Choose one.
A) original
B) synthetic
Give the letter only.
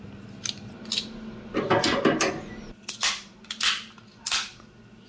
A